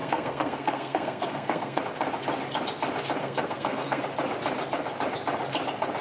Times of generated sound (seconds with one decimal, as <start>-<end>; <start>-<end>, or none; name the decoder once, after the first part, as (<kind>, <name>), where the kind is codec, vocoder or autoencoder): 0.0-1.8 (codec, SNAC); 3.2-4.0